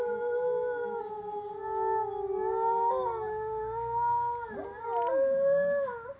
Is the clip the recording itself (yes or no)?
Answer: yes